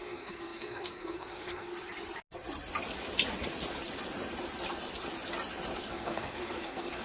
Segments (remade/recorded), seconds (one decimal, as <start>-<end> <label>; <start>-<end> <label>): 0.0-1.7 remade; 1.7-5.9 recorded; 5.9-7.0 remade